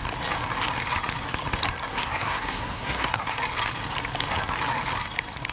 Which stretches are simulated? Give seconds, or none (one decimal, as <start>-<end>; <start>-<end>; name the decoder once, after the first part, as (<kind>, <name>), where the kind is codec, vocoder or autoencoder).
1.9-3.4 (codec, SNAC)